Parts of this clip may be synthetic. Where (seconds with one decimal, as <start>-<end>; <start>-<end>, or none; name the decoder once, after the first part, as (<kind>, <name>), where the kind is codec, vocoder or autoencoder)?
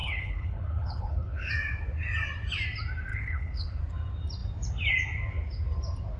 0.0-1.5 (codec, HILCodec); 3.1-3.8